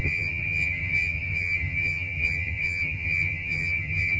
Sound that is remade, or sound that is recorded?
remade